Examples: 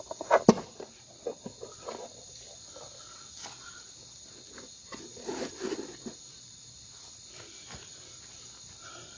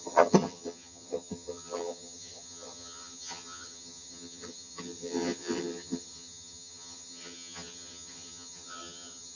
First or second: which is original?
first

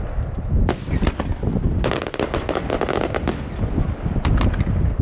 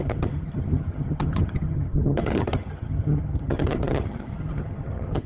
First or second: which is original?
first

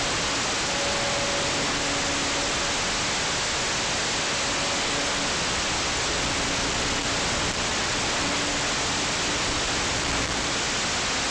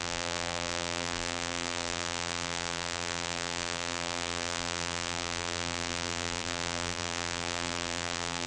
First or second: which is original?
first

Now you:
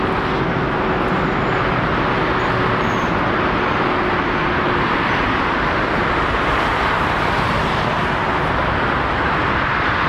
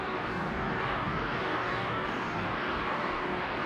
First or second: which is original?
first